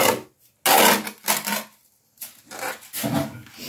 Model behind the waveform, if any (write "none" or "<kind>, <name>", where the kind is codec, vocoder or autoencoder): none